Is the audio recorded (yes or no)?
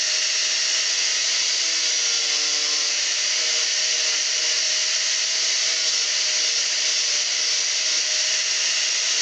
yes